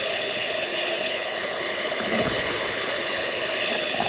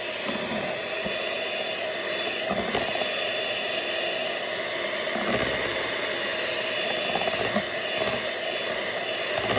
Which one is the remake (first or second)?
first